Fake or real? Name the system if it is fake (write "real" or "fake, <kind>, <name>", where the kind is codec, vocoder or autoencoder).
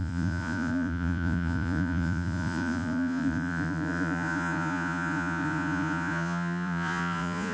fake, vocoder, Vocos